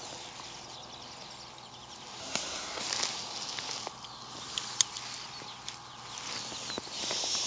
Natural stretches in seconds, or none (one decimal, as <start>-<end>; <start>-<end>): 0.0-2.2; 2.8-7.5